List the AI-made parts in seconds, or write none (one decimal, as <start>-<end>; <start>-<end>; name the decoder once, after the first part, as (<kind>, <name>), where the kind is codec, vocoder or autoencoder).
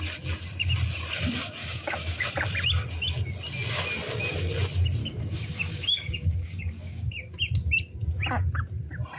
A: 1.6-2.3 (codec, DAC); 5.0-7.1